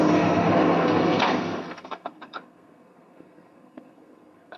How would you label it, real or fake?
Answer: fake